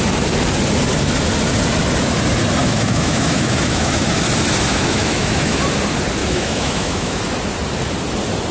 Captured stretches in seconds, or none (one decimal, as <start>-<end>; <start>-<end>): 0.0-2.6; 4.1-4.7; 5.6-6.2; 7.2-8.5